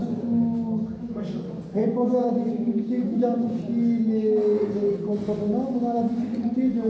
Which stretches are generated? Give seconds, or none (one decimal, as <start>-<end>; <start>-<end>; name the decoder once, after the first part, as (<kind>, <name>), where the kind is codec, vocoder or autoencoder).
1.8-3.6 (codec, DAC)